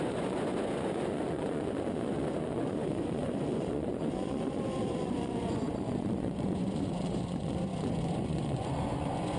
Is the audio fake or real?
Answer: fake